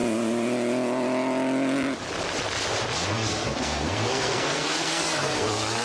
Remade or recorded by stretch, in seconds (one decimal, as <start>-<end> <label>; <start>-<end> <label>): 0.0-3.1 recorded; 3.1-5.8 remade